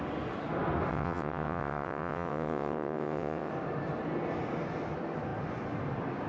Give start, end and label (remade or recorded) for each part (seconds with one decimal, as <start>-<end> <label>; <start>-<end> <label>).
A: 0.0-0.9 recorded; 0.9-3.5 remade; 3.5-6.3 recorded